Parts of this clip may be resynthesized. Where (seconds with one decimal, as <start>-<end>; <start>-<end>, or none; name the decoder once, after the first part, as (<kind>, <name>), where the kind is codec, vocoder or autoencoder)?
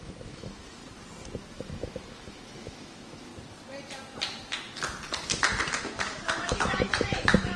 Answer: 0.0-0.8 (autoencoder, DAC-VAE); 1.5-3.3; 5.8-7.6